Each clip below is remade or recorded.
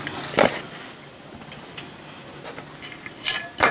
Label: recorded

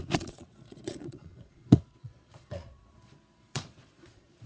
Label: remade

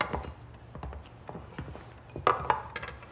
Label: recorded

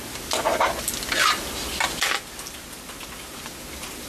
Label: recorded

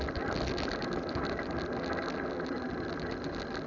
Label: recorded